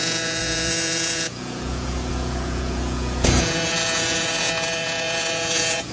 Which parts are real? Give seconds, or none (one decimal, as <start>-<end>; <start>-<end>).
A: none